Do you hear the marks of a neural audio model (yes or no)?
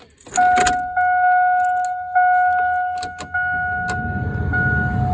no